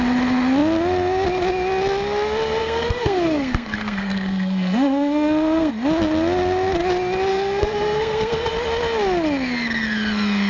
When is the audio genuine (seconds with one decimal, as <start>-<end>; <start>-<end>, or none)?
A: 0.0-2.6; 5.7-7.3; 8.5-10.5